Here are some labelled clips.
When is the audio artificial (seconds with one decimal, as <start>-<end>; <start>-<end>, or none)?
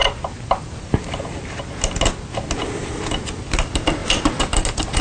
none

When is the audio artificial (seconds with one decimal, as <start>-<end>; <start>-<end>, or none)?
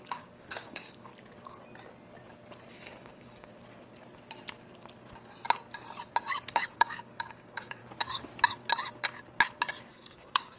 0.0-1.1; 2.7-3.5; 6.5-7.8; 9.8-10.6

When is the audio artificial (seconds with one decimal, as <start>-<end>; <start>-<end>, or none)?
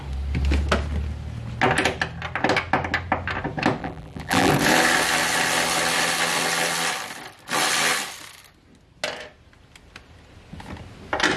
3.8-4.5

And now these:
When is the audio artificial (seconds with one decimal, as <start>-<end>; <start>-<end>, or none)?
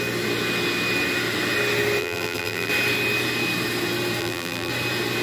2.0-2.7; 4.2-4.7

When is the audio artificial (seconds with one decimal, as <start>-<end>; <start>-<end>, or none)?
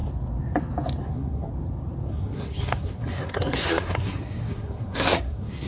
1.0-1.5; 2.1-5.7